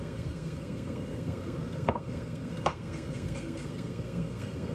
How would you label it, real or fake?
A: fake